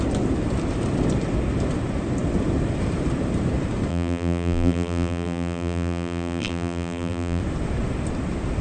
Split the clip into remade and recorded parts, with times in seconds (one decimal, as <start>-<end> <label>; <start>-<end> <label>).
0.0-3.9 recorded; 3.9-7.4 remade; 7.4-8.6 recorded